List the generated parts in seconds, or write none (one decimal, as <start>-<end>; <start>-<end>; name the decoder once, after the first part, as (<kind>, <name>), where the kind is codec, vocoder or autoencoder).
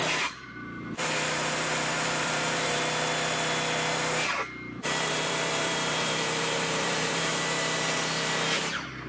0.0-2.8 (vocoder, BigVGAN v2); 4.8-7.3